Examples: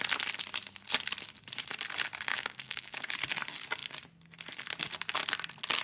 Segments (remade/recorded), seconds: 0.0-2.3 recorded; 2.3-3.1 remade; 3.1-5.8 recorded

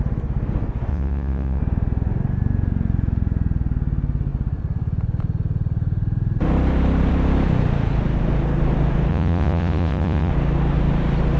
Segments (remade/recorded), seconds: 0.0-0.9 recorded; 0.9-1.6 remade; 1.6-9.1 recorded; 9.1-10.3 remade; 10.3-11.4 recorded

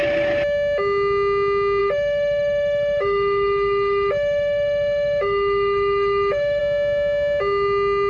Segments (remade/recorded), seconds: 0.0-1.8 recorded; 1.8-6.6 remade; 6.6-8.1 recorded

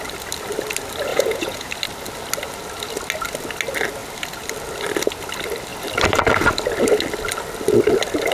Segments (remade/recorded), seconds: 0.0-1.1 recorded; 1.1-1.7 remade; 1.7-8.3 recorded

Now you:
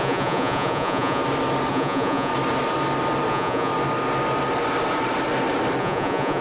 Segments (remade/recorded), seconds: 0.0-1.2 remade; 1.2-1.7 recorded; 1.7-2.3 remade; 2.3-3.3 recorded; 3.3-3.7 remade; 3.7-5.8 recorded; 5.8-6.4 remade

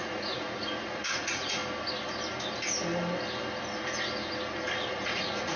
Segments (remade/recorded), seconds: 0.0-1.6 remade; 1.6-4.9 recorded; 4.9-5.6 remade